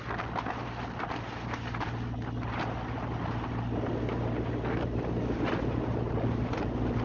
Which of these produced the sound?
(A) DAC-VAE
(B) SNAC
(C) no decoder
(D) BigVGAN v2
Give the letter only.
C